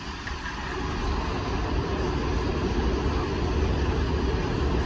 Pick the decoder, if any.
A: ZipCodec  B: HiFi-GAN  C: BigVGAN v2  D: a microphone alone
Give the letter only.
D